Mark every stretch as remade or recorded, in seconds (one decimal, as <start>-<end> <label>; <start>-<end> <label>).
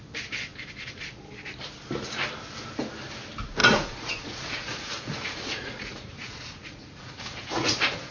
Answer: 0.0-3.6 recorded; 3.6-8.1 remade